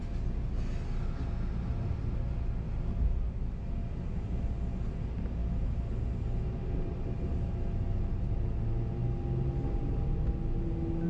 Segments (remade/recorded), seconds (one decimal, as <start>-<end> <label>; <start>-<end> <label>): 0.0-11.1 recorded